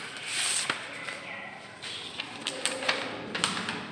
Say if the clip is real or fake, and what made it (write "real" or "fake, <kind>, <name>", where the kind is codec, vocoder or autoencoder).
real